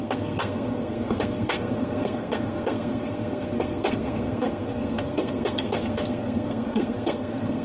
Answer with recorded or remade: remade